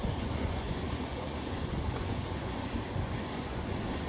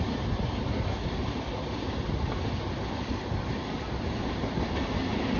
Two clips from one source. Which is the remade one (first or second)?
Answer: first